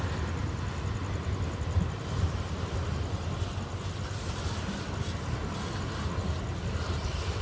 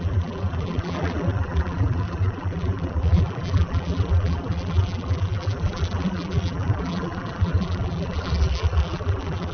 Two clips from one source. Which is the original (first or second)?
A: first